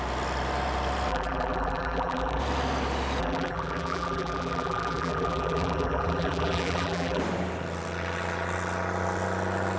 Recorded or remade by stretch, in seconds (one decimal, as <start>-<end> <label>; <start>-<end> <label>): 0.0-1.1 recorded; 1.1-2.4 remade; 2.4-3.2 recorded; 3.2-7.2 remade; 7.2-9.8 recorded